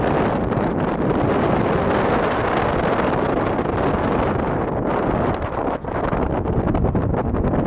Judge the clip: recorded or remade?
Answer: recorded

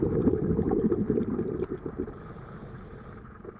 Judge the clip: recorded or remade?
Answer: recorded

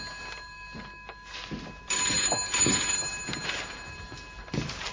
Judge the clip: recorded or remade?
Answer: recorded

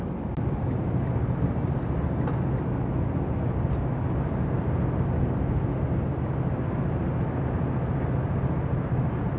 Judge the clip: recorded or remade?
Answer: recorded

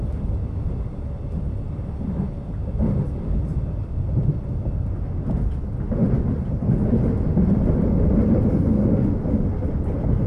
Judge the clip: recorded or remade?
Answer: recorded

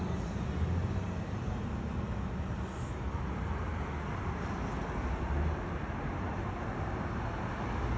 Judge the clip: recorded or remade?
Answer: recorded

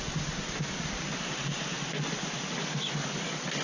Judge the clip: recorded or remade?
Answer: recorded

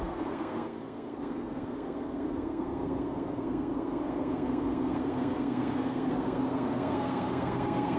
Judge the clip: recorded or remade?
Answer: remade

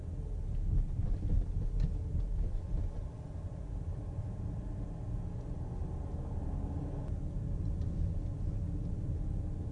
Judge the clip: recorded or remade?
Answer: recorded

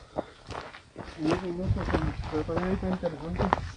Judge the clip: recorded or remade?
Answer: recorded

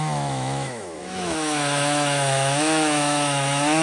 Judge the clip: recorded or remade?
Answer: remade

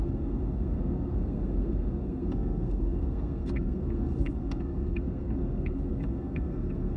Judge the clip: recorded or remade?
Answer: remade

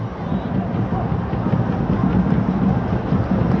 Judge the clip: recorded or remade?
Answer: recorded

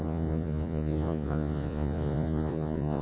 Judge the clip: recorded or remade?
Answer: remade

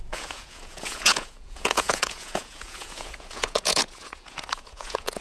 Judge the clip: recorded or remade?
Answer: remade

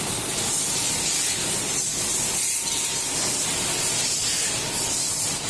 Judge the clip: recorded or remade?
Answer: recorded